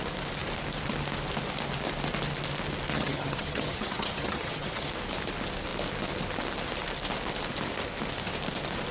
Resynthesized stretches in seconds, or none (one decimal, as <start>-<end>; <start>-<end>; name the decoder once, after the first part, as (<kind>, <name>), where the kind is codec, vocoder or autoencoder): 2.9-4.9 (vocoder, HiFi-GAN)